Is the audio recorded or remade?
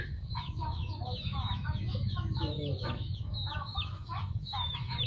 remade